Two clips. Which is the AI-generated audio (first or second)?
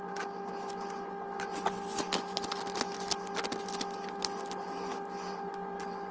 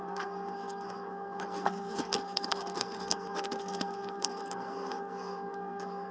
second